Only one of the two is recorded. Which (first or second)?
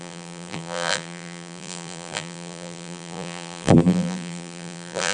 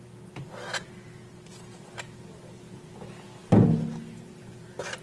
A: second